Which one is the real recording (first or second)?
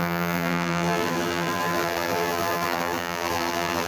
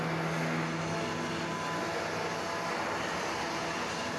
second